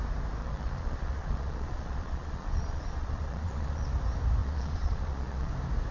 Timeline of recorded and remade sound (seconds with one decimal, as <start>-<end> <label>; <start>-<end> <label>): 0.0-0.4 recorded; 0.4-3.9 remade; 3.9-4.4 recorded; 4.4-5.5 remade; 5.5-5.9 recorded